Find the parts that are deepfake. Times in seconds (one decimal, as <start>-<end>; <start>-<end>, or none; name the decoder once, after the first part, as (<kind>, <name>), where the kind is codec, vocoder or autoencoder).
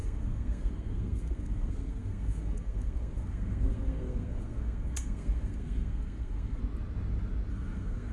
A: 0.0-6.6 (codec, SNAC); 7.5-8.1